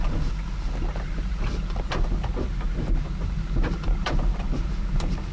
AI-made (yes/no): yes